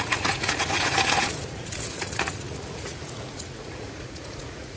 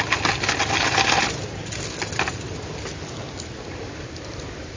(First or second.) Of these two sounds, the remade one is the first